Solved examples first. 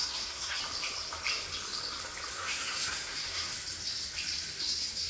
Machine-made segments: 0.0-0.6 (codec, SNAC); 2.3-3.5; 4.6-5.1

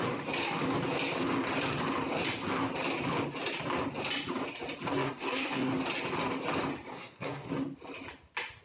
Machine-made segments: 4.9-5.7 (codec, SNAC); 6.9-7.5

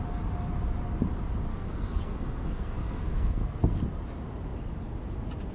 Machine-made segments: 1.5-3.8 (codec, SNAC)

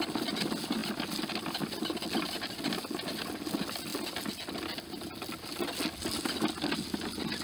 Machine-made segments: none

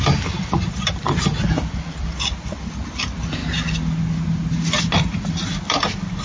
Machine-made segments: none

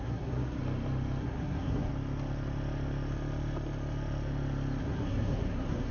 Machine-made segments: 0.0-0.6 (codec, SNAC); 1.2-1.9; 4.8-5.9

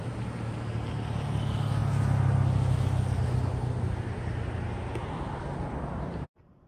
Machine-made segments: none